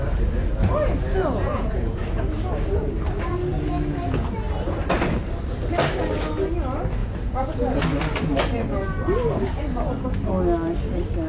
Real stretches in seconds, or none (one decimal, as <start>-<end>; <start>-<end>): 0.0-1.2; 2.2-7.0; 7.8-11.3